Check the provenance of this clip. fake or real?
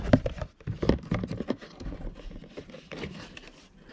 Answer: real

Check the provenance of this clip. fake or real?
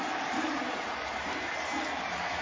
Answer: fake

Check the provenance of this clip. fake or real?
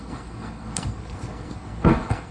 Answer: fake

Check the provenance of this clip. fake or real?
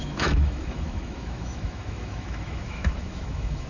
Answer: fake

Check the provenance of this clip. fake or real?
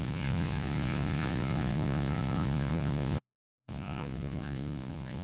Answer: fake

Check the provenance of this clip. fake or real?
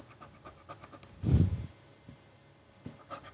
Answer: real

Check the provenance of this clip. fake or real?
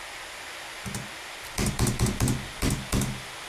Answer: real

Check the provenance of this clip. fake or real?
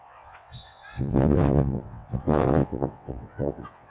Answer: fake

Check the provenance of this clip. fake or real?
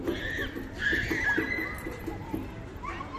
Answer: real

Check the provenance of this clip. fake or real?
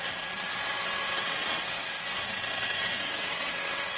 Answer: fake